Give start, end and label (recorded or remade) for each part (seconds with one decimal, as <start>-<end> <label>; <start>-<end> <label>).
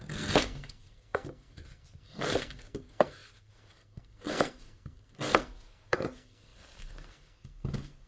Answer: 0.0-8.1 remade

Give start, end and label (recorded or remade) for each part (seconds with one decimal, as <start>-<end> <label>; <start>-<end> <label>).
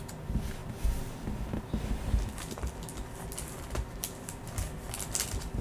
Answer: 0.0-5.6 recorded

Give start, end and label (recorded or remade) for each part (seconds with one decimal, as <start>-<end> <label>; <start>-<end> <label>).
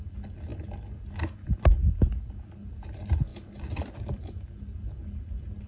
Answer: 0.0-5.7 recorded